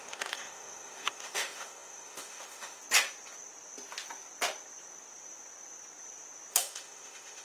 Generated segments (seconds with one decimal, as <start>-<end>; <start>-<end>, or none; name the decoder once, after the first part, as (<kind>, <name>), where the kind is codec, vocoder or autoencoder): 0.0-2.8 (autoencoder, DAC-VAE); 6.5-7.4